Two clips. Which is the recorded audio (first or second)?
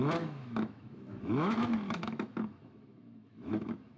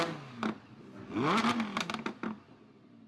second